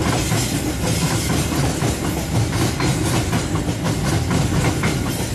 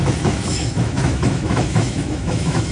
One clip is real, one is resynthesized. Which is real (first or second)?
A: first